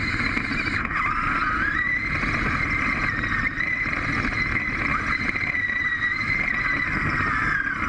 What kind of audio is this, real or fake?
real